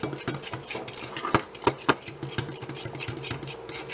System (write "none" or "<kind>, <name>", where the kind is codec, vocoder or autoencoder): none